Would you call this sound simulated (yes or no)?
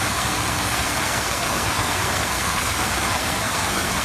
yes